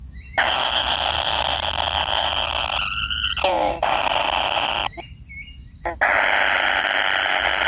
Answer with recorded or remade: recorded